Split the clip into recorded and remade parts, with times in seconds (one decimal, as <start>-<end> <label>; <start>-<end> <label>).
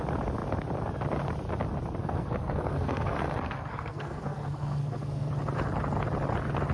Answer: 0.0-2.0 recorded; 2.0-5.3 remade; 5.3-6.7 recorded